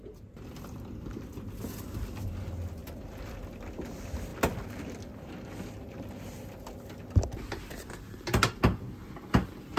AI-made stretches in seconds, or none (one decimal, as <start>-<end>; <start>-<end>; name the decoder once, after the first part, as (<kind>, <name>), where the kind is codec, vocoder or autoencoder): none